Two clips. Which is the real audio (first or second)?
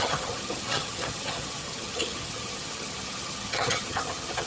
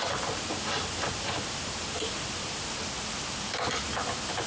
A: second